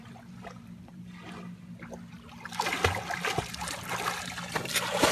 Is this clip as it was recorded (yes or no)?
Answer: yes